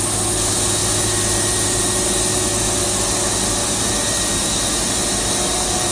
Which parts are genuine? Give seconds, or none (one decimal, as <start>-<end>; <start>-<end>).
0.0-5.9